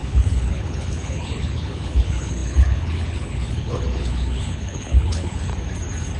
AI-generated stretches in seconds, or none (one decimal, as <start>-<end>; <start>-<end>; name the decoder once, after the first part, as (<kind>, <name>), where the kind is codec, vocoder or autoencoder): 0.0-5.5 (codec, HILCodec)